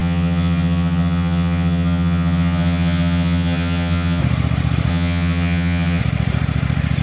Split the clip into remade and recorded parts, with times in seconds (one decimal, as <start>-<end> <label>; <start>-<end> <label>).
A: 0.0-4.2 remade; 4.2-4.9 recorded; 4.9-6.0 remade; 6.0-7.0 recorded